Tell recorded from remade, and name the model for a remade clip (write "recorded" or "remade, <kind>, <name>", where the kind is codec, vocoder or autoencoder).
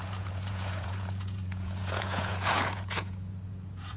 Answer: remade, vocoder, Vocos